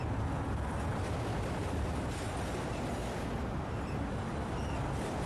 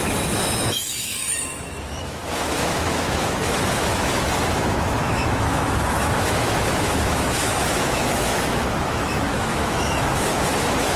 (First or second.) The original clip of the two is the first